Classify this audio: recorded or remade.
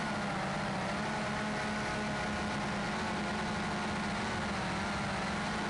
recorded